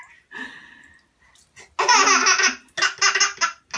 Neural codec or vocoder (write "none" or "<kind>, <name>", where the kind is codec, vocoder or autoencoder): none